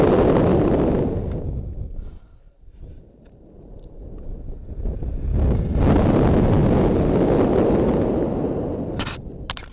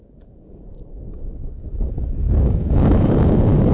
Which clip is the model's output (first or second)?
second